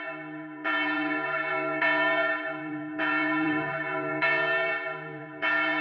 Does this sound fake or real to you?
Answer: fake